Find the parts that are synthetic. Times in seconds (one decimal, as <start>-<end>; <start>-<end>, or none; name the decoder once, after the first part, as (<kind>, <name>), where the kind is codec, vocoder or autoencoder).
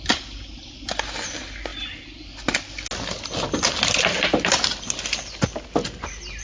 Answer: none